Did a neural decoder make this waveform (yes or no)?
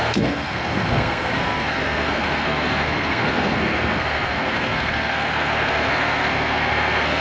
yes